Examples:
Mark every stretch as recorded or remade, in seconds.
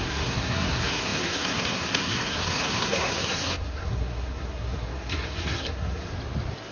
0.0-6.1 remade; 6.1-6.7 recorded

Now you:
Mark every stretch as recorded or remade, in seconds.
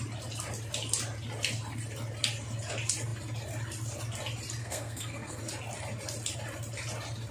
0.0-4.6 recorded; 4.6-5.4 remade; 5.4-7.3 recorded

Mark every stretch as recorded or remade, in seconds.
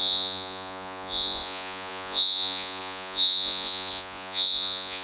0.0-5.0 remade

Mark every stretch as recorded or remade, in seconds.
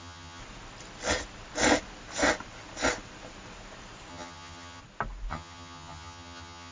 0.0-0.4 remade; 0.4-4.1 recorded; 4.1-4.8 remade; 4.8-5.3 recorded; 5.3-6.7 remade